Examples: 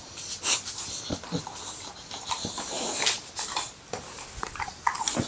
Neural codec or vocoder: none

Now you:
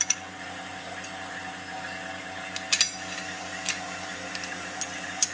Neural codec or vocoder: none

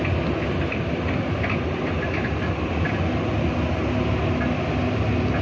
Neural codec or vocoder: none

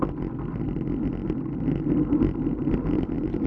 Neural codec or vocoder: none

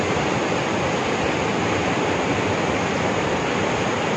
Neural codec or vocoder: none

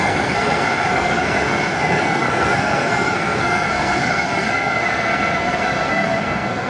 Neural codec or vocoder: codec, SNAC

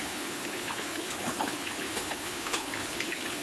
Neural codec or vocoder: codec, HILCodec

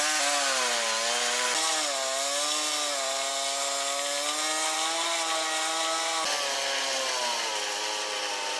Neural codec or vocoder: none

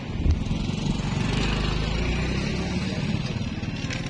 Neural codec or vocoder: none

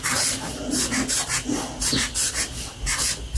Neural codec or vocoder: none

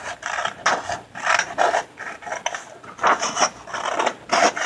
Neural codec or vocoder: none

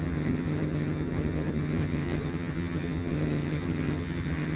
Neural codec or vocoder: vocoder, HiFi-GAN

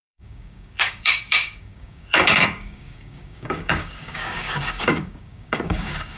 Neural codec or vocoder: codec, DAC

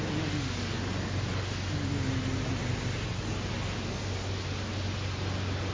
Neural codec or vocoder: none